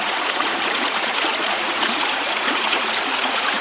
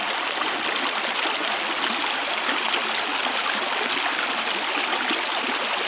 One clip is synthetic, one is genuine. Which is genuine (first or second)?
second